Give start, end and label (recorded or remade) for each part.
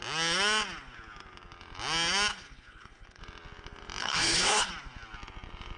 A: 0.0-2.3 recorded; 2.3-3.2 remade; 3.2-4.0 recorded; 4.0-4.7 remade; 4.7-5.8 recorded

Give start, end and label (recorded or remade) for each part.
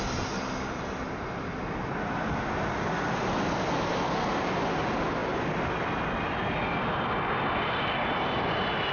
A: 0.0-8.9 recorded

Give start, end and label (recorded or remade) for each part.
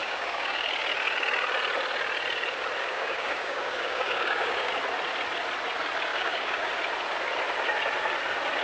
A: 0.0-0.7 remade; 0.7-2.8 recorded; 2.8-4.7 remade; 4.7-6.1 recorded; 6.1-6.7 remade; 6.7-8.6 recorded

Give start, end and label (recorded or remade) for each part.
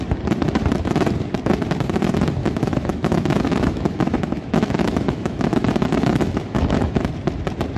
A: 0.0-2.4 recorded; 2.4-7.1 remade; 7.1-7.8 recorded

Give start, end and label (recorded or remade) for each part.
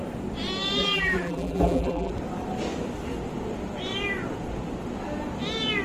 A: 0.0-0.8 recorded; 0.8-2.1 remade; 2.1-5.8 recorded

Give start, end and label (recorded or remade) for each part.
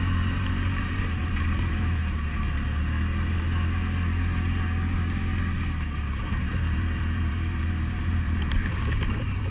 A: 0.0-2.0 remade; 2.0-6.2 recorded; 6.2-9.5 remade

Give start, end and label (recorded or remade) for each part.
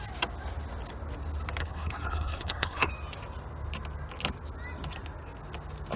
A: 0.0-1.6 recorded; 1.6-2.9 remade; 2.9-6.0 recorded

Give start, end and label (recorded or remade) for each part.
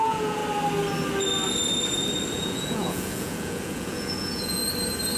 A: 0.0-0.4 remade; 0.4-2.3 recorded; 2.3-4.6 remade; 4.6-5.2 recorded